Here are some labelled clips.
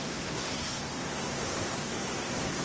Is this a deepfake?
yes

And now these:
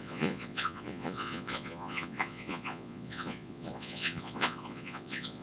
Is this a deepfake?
yes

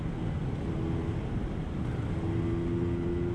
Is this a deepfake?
no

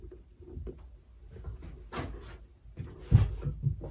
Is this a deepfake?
no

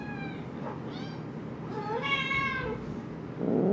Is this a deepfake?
no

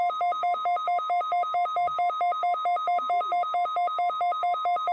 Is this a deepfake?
yes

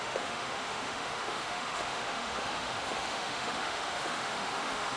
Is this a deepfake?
yes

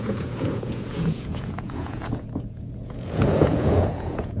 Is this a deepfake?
yes